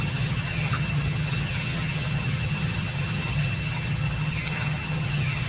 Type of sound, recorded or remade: remade